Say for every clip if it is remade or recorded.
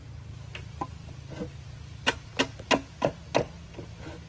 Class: recorded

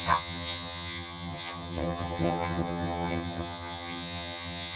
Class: remade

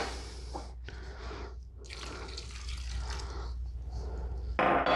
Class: recorded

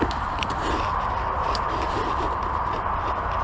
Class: recorded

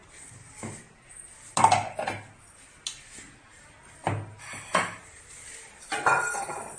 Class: recorded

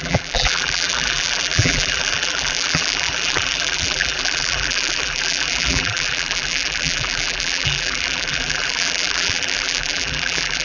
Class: remade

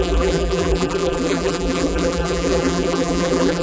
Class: remade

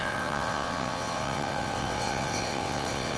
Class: remade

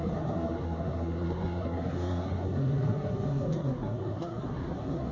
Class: remade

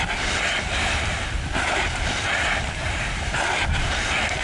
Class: recorded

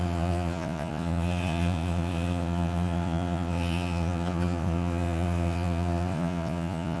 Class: remade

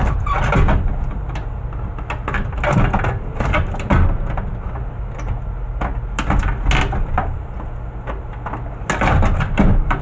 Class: recorded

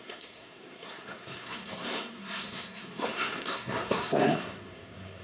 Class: remade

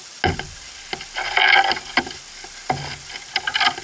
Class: recorded